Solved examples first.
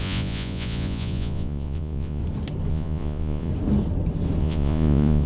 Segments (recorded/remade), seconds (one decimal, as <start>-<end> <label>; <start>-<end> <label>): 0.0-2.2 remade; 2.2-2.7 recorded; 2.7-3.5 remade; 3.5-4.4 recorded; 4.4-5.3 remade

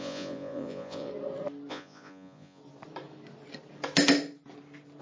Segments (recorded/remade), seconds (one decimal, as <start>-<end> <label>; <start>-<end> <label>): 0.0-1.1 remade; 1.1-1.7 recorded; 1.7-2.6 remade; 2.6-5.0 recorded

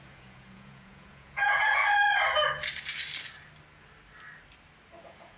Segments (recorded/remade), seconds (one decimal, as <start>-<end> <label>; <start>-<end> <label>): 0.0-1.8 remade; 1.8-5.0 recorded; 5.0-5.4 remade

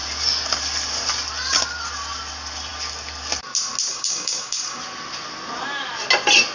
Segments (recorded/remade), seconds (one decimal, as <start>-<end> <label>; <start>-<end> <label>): 0.0-3.9 recorded; 3.9-4.8 remade; 4.8-6.5 recorded

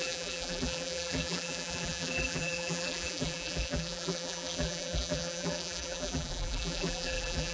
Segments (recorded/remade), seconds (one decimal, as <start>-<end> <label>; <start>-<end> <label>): 0.0-7.5 remade

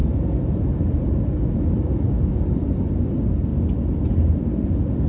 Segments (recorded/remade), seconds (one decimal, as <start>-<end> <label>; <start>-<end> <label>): 0.0-5.1 recorded